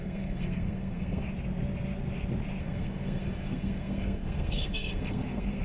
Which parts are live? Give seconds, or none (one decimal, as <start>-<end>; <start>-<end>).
1.3-2.6